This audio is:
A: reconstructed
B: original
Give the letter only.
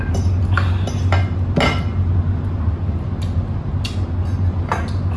B